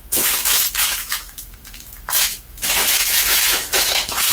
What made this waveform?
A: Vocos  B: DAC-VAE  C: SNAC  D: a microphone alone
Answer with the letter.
B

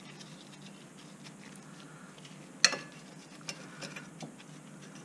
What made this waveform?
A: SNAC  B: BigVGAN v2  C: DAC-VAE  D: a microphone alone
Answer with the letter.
D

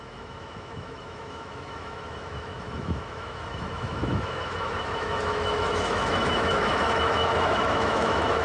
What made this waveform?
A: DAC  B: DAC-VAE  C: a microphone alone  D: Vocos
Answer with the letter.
B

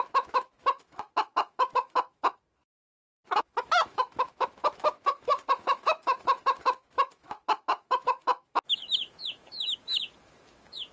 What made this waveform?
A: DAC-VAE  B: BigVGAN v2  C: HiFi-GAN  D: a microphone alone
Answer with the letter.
A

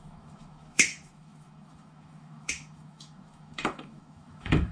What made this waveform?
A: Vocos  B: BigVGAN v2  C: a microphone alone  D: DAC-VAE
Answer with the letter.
D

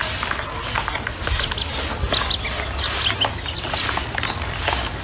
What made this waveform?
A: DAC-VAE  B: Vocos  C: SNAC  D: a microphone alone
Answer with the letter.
D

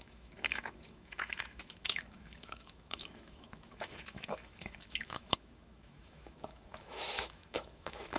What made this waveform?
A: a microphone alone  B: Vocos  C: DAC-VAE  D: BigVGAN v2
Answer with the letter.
C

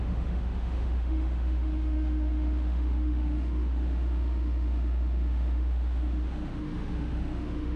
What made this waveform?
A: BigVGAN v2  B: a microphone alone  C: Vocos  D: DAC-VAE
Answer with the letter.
D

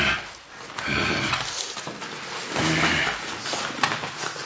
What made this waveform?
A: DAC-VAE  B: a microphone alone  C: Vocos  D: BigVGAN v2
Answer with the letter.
B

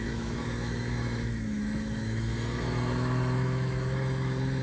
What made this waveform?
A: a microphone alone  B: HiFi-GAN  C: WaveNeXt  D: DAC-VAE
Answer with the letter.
D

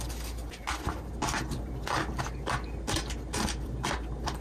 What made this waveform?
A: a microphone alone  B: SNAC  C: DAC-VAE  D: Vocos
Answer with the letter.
A